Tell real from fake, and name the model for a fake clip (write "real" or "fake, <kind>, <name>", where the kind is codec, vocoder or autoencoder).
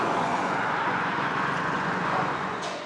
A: fake, vocoder, Vocos